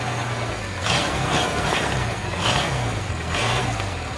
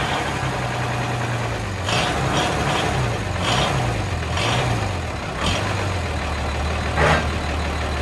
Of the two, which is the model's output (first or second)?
first